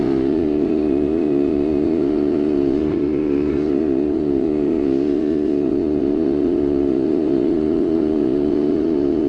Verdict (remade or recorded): remade